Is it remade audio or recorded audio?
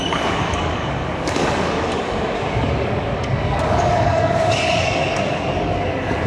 remade